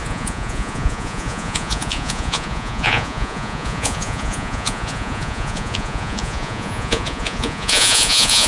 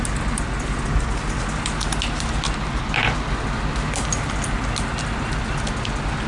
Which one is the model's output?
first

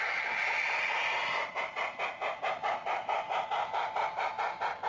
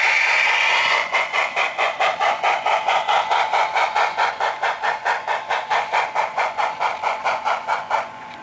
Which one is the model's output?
second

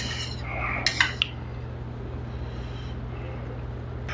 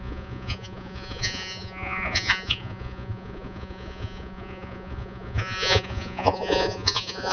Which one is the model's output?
second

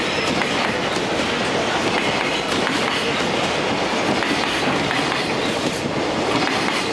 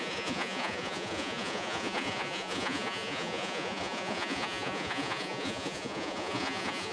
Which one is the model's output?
second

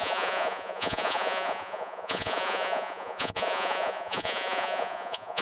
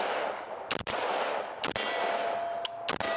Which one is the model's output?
first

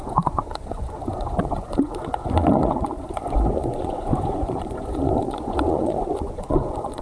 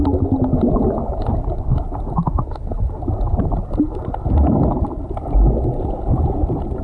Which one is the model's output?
first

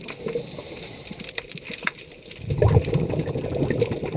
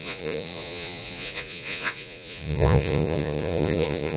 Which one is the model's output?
second